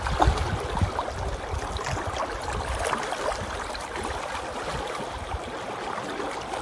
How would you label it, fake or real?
real